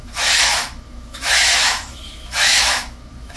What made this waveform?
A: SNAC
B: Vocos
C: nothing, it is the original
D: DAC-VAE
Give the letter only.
D